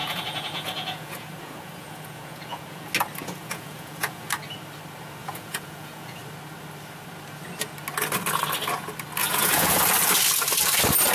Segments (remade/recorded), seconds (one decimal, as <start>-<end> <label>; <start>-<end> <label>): 0.0-2.9 remade; 2.9-3.4 recorded; 3.4-4.3 remade; 4.3-5.2 recorded; 5.2-6.2 remade; 6.2-9.2 recorded; 9.2-9.8 remade; 9.8-11.1 recorded